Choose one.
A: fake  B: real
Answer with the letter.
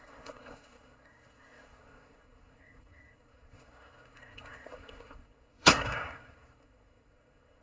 A